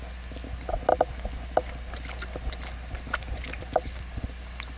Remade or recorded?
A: recorded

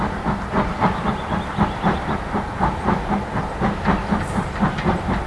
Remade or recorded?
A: recorded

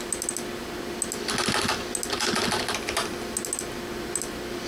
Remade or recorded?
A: recorded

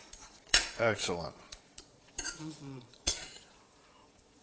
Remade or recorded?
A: remade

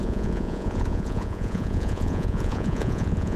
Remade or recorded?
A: remade